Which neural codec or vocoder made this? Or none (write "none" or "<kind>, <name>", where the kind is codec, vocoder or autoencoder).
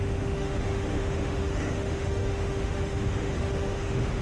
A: autoencoder, DAC-VAE